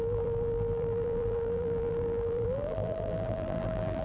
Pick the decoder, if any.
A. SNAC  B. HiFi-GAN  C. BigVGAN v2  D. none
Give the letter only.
C